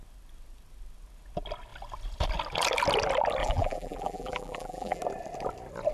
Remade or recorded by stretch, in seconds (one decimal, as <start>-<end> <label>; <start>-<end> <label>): 0.0-3.4 recorded; 3.4-5.0 remade; 5.0-5.9 recorded